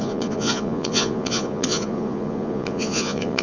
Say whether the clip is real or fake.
fake